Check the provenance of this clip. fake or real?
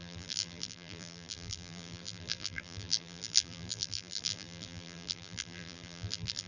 fake